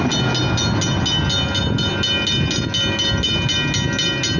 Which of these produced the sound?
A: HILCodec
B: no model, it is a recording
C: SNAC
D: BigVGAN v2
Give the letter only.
B